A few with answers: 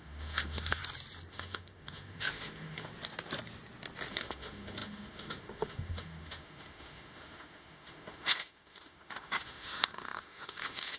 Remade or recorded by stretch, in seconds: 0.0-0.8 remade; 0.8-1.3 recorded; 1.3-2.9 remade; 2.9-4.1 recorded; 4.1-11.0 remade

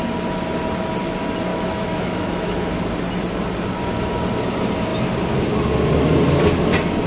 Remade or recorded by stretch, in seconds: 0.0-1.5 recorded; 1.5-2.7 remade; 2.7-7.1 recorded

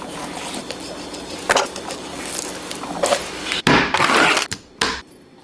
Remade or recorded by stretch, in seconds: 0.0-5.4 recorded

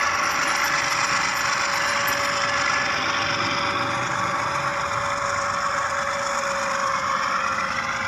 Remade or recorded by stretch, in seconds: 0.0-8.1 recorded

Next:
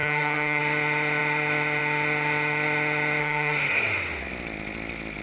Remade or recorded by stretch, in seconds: 0.0-0.6 remade; 0.6-3.2 recorded; 3.2-4.2 remade; 4.2-5.2 recorded

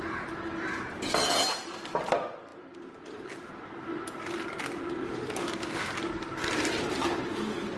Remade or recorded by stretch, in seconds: 0.0-5.4 recorded; 5.4-5.9 remade; 5.9-7.8 recorded

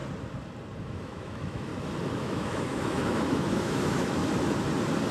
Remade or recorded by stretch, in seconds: 0.0-0.8 recorded; 0.8-1.7 remade; 1.7-2.2 recorded; 2.2-4.2 remade; 4.2-5.1 recorded

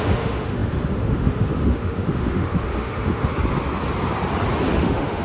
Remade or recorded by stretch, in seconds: 0.0-3.3 remade; 3.3-4.8 recorded; 4.8-5.2 remade